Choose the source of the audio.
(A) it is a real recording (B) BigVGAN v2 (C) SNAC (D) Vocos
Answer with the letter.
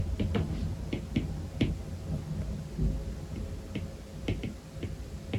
A